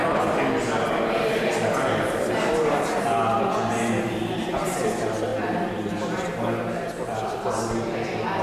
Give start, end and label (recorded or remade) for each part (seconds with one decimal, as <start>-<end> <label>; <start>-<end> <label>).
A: 0.0-5.3 recorded; 5.3-6.4 remade; 6.4-8.4 recorded